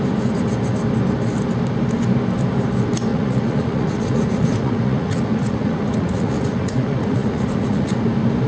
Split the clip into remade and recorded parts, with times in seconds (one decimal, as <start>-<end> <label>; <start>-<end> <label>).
0.0-3.1 recorded; 3.1-7.9 remade; 7.9-8.5 recorded